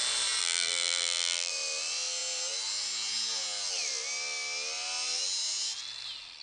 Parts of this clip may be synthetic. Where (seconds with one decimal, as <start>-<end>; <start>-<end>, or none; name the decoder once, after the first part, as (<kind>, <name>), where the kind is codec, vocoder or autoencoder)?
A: 0.4-1.5 (vocoder, BigVGAN v2)